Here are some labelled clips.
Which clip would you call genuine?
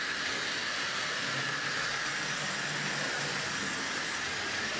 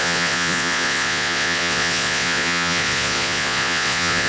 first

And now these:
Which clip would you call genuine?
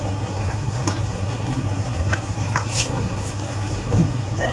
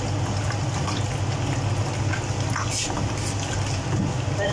second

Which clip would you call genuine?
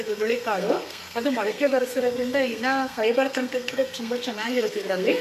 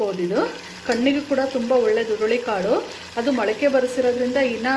second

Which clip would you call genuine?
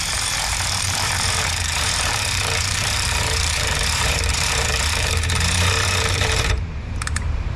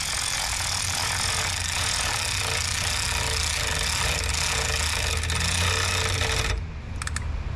second